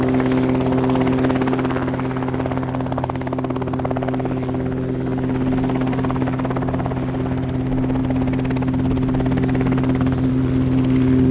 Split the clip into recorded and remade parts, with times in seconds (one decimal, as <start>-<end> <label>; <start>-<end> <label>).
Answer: 0.0-11.3 recorded